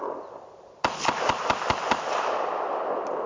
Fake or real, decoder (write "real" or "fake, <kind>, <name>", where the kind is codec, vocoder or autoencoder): real